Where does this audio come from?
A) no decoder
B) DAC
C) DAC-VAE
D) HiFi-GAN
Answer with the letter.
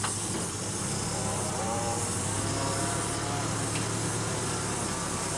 A